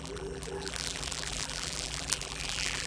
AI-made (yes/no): yes